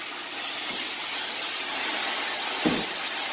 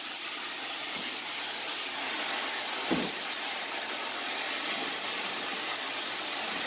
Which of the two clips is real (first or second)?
first